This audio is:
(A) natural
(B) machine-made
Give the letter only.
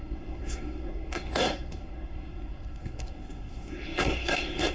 B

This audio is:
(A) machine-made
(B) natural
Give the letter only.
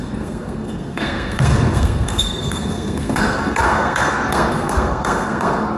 A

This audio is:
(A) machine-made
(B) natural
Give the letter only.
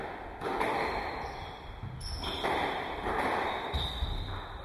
B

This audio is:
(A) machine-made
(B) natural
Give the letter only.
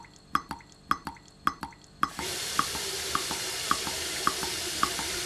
B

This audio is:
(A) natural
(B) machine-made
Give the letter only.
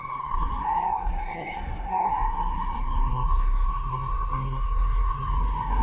B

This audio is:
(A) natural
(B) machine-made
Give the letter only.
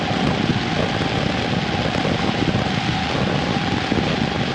A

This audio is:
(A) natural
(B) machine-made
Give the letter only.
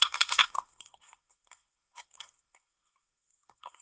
B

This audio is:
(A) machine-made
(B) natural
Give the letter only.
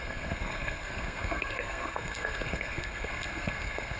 A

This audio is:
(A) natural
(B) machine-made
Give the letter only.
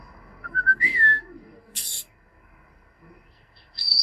B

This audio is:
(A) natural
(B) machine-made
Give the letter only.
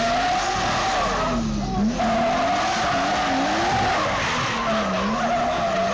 A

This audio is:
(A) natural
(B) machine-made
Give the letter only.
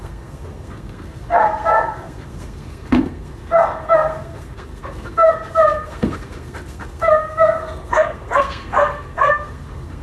B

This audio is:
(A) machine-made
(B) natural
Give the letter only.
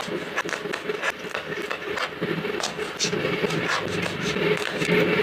B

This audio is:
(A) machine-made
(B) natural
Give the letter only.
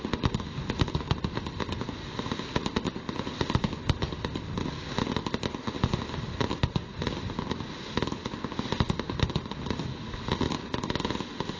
B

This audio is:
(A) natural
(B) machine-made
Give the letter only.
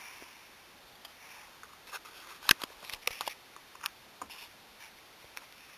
A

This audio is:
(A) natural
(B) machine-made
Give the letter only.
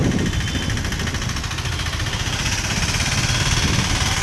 A